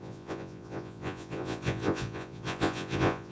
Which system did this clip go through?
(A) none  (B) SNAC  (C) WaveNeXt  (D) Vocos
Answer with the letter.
D